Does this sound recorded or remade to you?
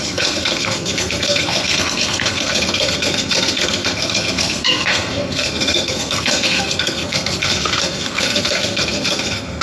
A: remade